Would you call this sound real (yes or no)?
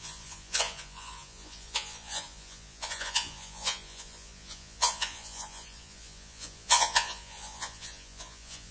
no